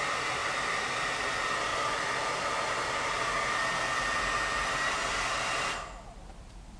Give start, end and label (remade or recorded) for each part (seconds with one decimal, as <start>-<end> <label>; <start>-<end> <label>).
0.0-0.4 recorded; 0.4-1.2 remade; 1.2-1.7 recorded; 1.7-3.4 remade; 3.4-5.0 recorded; 5.0-5.7 remade; 5.7-6.8 recorded